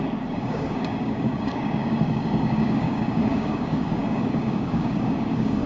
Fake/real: fake